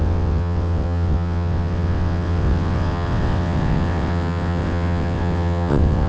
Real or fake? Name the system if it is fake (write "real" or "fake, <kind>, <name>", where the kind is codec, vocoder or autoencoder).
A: fake, vocoder, WaveNeXt